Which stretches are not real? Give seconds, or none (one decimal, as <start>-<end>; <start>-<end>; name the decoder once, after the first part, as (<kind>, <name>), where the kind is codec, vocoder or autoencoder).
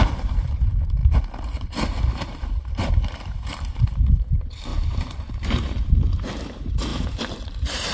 0.0-7.9 (vocoder, BigVGAN v2)